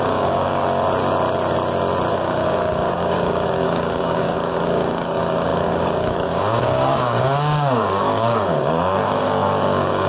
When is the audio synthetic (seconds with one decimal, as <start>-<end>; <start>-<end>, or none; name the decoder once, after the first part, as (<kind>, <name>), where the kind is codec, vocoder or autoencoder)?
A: 0.0-0.6 (codec, DAC); 2.1-10.1